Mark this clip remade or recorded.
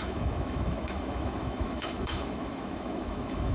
remade